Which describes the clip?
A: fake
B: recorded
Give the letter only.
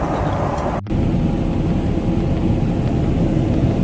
B